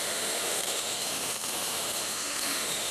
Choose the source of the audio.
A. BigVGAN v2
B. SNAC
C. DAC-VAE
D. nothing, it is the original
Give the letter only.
C